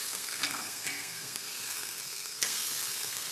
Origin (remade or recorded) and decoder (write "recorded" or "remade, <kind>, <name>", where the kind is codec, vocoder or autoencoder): remade, codec, SNAC